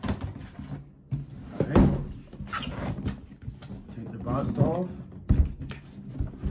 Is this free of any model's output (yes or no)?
yes